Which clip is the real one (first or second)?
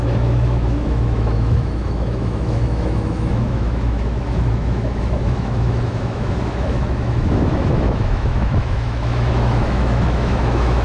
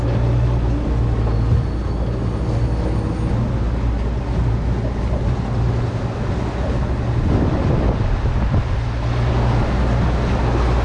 second